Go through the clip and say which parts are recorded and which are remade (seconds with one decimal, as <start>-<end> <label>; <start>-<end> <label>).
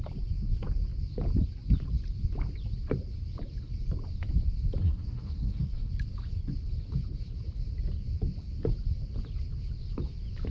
0.0-4.8 recorded; 4.8-5.9 remade; 5.9-10.5 recorded